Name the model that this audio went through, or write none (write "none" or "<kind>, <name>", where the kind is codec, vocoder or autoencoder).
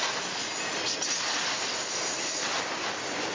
none